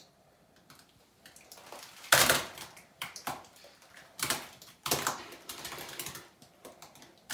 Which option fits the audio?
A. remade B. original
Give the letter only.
A